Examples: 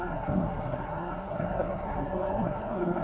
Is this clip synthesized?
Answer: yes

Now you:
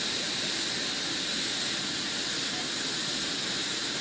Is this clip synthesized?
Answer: no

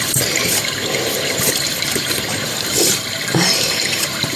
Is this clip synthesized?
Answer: yes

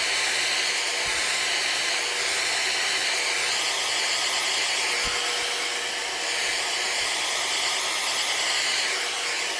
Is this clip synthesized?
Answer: no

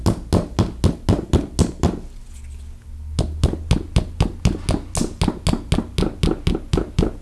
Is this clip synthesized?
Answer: no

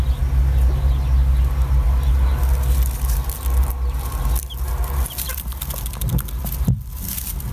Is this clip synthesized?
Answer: no